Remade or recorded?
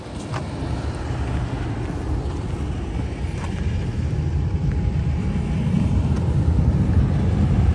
recorded